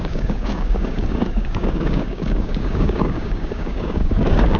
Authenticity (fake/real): fake